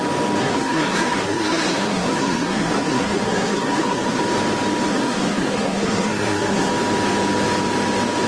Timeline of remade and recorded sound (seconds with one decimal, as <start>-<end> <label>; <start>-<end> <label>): 0.0-0.4 recorded; 0.4-4.2 remade; 4.2-4.9 recorded; 4.9-6.7 remade; 6.7-8.3 recorded